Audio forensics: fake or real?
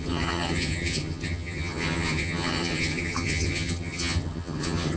fake